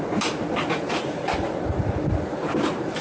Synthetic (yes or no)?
yes